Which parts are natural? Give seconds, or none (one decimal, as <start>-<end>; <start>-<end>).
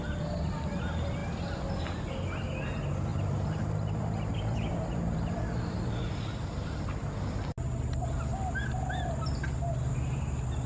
0.0-3.1; 6.0-10.7